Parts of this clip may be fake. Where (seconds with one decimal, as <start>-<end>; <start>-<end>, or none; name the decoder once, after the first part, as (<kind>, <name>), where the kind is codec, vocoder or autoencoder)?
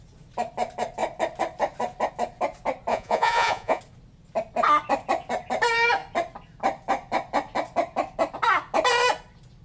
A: 2.9-3.8 (vocoder, Vocos)